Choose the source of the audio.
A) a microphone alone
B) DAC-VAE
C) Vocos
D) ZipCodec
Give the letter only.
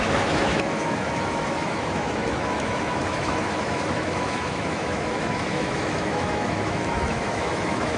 B